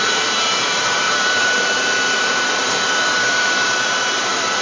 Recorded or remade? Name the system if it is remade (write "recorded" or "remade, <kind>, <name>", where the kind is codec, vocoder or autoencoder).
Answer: remade, vocoder, BigVGAN v2